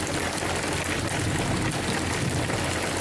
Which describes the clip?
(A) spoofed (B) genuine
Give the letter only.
B